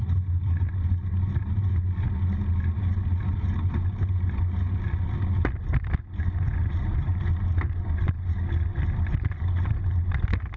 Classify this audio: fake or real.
real